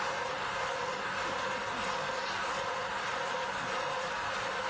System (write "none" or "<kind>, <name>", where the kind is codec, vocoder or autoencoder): none